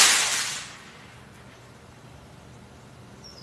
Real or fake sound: fake